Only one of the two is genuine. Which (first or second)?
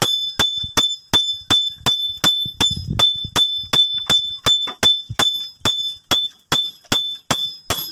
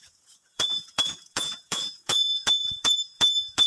first